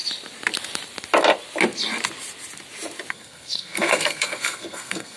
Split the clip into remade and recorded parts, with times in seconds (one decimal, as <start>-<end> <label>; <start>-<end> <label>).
0.0-3.1 recorded; 3.1-5.2 remade